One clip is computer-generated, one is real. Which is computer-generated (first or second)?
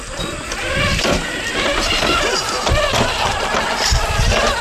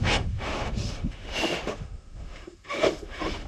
second